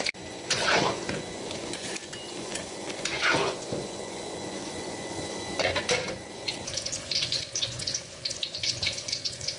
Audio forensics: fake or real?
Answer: fake